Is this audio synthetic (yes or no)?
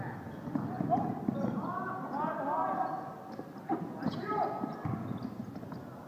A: no